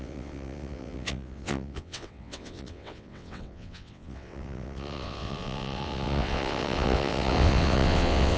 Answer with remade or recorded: remade